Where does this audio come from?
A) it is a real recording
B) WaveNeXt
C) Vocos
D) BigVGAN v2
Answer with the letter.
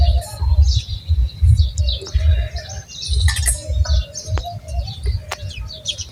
A